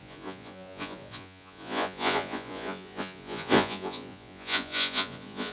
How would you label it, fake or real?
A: fake